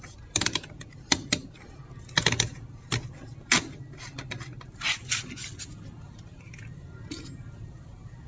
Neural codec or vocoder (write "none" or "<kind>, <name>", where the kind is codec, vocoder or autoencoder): none